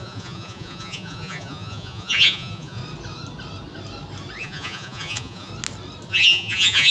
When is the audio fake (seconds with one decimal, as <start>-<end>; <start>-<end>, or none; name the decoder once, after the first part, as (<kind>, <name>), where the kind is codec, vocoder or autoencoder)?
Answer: 0.0-2.8 (vocoder, Vocos); 4.4-5.5; 6.1-6.9